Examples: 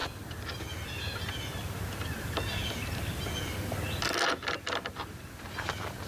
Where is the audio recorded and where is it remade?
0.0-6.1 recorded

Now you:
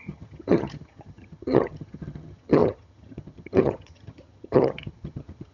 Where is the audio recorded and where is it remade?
0.0-5.5 remade

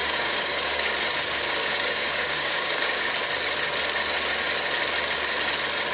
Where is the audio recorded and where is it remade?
0.0-0.9 remade; 0.9-1.6 recorded; 1.6-3.1 remade; 3.1-5.9 recorded

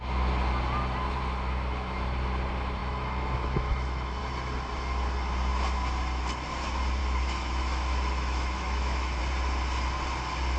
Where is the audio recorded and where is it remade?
0.0-2.8 recorded; 2.8-4.2 remade; 4.2-7.0 recorded; 7.0-9.2 remade; 9.2-10.6 recorded

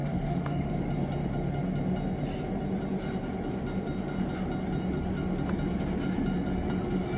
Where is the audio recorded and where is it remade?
0.0-0.7 remade; 0.7-7.2 recorded

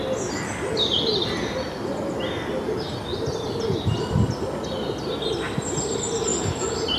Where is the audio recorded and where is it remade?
0.0-6.3 recorded; 6.3-7.0 remade

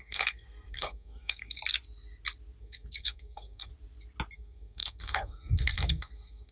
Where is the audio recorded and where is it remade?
0.0-1.6 remade; 1.6-2.6 recorded; 2.6-3.7 remade; 3.7-4.3 recorded; 4.3-6.5 remade

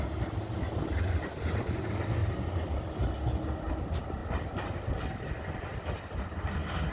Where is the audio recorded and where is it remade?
0.0-6.9 recorded